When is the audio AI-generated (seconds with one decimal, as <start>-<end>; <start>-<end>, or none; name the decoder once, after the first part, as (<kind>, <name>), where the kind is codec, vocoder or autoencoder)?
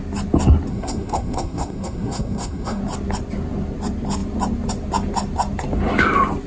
0.7-2.8 (codec, SNAC)